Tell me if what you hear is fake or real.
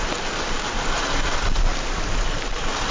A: real